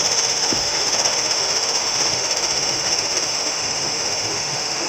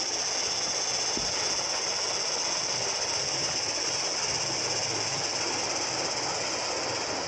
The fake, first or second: first